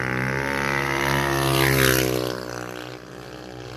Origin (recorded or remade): recorded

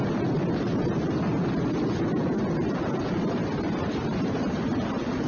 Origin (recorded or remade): recorded